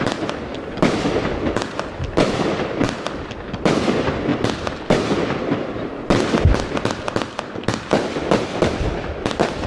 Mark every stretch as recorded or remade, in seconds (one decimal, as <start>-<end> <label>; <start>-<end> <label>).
0.0-0.5 recorded; 0.5-3.9 remade; 3.9-4.3 recorded; 4.3-5.0 remade; 5.0-9.7 recorded